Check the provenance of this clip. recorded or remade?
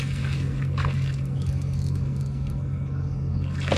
remade